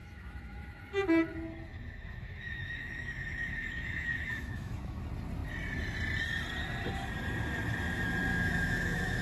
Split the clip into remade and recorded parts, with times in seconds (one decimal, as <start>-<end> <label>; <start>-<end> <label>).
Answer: 0.0-0.8 remade; 0.8-1.7 recorded; 1.7-5.0 remade; 5.0-8.3 recorded; 8.3-9.2 remade